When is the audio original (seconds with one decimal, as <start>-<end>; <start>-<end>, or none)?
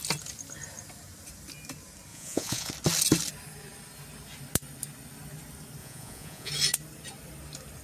0.0-2.1; 2.7-5.8; 6.5-7.8